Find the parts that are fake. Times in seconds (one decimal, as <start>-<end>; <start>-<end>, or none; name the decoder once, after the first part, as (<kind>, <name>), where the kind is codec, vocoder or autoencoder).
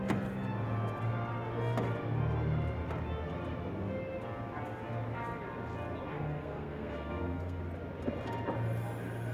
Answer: 6.1-7.6 (codec, SNAC)